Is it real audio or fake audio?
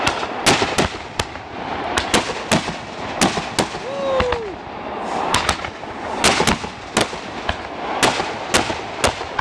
real